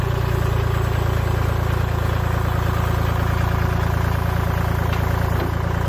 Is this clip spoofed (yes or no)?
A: no